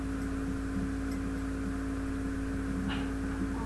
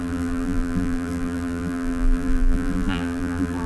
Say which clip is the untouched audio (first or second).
first